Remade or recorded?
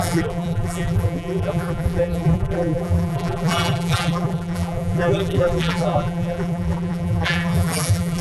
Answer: remade